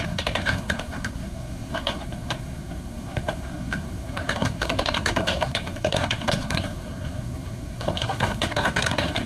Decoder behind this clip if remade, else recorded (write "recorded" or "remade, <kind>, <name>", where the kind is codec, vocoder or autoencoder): remade, codec, SNAC